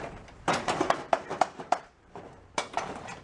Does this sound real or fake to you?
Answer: fake